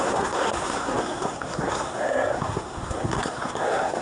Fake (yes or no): yes